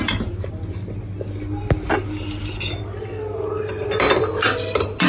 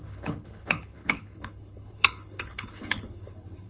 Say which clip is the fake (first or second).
second